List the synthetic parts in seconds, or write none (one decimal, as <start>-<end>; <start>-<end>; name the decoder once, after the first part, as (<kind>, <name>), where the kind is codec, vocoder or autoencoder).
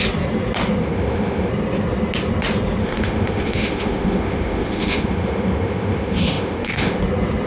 0.8-1.5 (autoencoder, DAC-VAE); 2.8-7.0